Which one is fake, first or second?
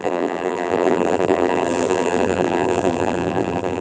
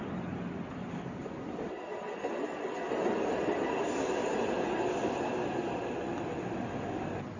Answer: first